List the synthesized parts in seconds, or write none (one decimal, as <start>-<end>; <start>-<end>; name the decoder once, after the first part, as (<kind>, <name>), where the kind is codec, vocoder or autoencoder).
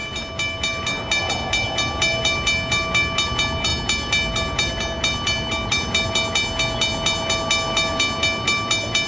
none